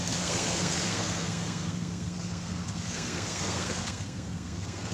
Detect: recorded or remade remade